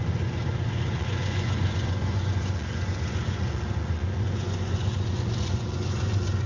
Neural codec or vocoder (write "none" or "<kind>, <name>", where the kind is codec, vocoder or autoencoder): vocoder, Vocos